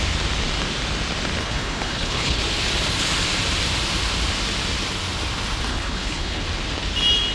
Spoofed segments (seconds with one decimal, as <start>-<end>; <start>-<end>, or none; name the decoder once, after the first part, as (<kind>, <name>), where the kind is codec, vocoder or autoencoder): 1.4-2.4 (codec, HILCodec); 5.7-6.4